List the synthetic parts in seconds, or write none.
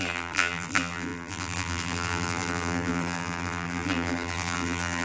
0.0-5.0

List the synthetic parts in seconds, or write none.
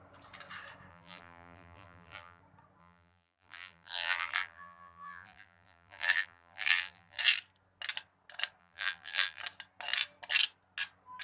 0.9-2.4; 2.8-7.2; 8.6-9.4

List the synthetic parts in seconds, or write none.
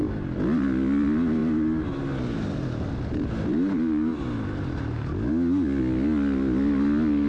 none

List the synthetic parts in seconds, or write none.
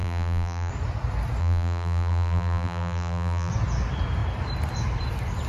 0.0-0.7; 1.4-3.5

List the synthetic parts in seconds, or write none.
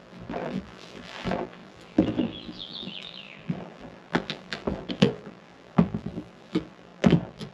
0.0-7.5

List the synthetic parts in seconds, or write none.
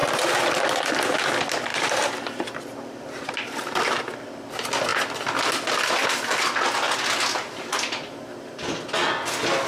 0.0-0.6; 1.7-4.0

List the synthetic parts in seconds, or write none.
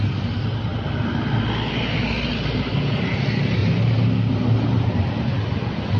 3.6-5.3